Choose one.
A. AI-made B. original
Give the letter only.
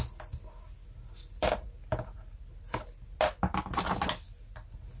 B